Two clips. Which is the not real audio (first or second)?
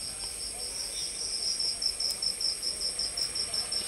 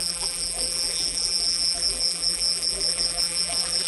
second